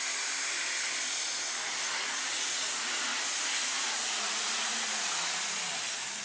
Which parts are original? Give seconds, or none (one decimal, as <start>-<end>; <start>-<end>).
0.0-1.7; 5.4-6.2